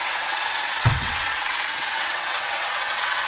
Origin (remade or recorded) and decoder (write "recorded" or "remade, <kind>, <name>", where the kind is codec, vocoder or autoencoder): remade, vocoder, WaveNeXt